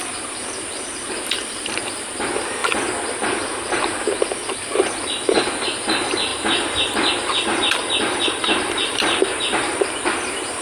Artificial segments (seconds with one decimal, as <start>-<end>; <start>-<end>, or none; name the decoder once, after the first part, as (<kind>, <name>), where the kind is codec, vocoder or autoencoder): 0.0-2.6 (vocoder, BigVGAN v2); 3.1-6.3; 8.4-10.6

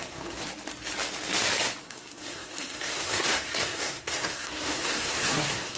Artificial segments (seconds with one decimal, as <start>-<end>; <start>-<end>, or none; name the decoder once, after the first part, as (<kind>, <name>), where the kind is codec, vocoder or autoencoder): 0.0-0.4 (codec, SNAC); 1.8-5.8

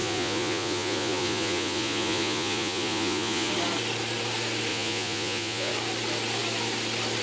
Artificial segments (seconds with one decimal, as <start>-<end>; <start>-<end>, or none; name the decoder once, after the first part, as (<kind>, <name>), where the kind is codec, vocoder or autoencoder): 0.0-3.5 (vocoder, Vocos); 4.7-5.7